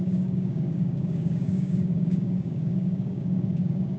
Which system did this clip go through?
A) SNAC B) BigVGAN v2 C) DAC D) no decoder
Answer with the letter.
C